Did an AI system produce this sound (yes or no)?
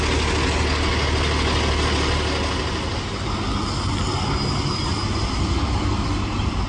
no